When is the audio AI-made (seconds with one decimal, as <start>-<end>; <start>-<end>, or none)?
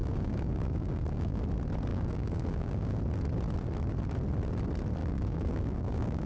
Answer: 0.0-1.4; 1.9-3.0; 5.0-6.3